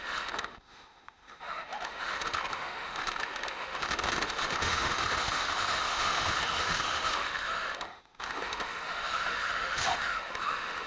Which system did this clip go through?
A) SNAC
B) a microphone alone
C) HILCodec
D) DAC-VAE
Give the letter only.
D